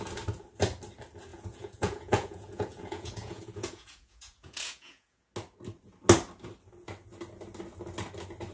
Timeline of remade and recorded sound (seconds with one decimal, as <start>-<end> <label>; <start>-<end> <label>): 0.0-1.3 recorded; 1.3-5.3 remade; 5.3-8.5 recorded